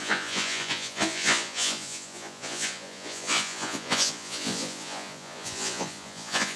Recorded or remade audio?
remade